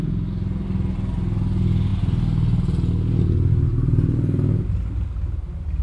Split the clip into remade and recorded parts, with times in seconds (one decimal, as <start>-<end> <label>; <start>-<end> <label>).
0.0-5.8 recorded